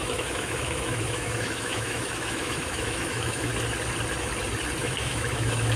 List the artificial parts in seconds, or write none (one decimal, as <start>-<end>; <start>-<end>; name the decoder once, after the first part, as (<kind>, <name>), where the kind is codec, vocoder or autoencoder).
0.0-3.5 (autoencoder, DAC-VAE); 4.8-5.8